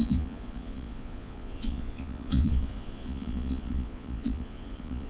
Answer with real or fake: fake